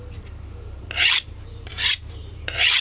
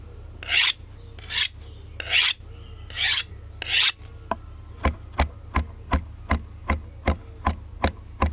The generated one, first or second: first